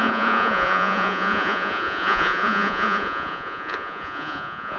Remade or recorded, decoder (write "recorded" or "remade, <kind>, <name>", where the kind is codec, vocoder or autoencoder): remade, vocoder, Vocos